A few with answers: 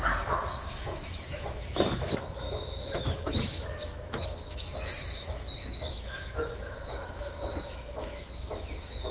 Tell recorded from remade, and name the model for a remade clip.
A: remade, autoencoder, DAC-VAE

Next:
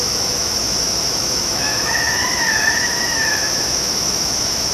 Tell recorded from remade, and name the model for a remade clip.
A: remade, autoencoder, DAC-VAE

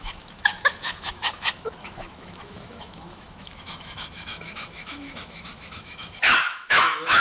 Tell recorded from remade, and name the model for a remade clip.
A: remade, autoencoder, DAC-VAE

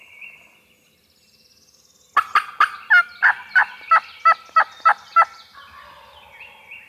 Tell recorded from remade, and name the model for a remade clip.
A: recorded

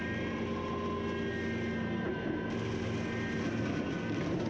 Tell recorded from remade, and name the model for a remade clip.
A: recorded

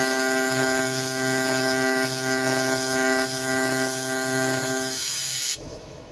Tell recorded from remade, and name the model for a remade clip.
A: remade, autoencoder, DAC-VAE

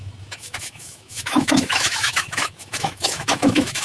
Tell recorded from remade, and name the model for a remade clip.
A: remade, autoencoder, DAC-VAE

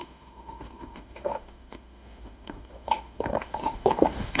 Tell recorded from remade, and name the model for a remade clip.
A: remade, autoencoder, DAC-VAE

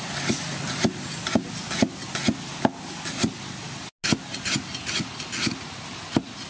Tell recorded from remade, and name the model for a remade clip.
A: recorded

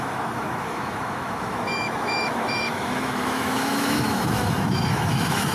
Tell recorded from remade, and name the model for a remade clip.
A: remade, autoencoder, DAC-VAE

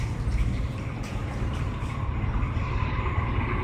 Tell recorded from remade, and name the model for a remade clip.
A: recorded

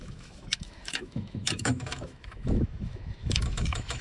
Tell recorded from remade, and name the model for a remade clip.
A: remade, autoencoder, DAC-VAE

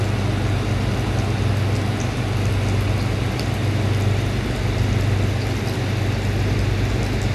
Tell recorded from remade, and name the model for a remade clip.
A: recorded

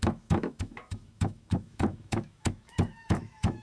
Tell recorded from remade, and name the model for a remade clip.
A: remade, autoencoder, DAC-VAE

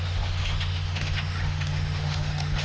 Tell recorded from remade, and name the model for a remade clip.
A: remade, autoencoder, DAC-VAE